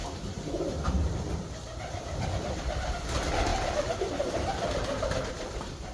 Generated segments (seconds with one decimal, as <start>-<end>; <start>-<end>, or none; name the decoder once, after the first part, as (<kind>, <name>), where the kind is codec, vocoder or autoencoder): none